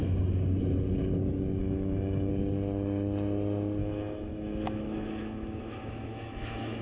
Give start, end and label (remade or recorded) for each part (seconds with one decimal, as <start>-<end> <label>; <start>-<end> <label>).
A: 0.0-1.6 recorded; 1.6-2.3 remade; 2.3-3.8 recorded; 3.8-6.8 remade